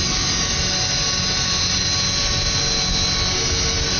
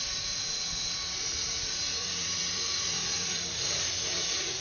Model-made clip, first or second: second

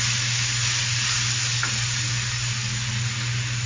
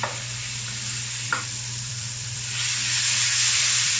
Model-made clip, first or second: second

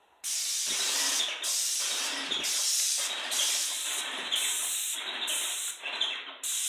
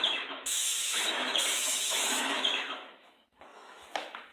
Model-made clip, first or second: second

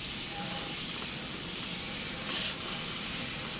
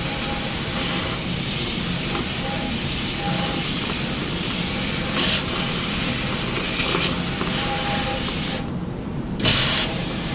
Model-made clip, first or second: first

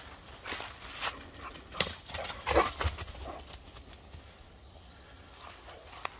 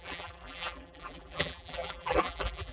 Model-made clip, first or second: second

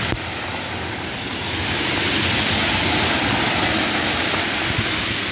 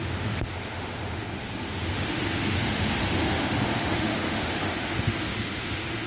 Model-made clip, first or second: second